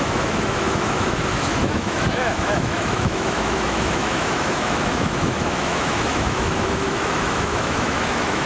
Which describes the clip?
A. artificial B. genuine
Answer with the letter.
A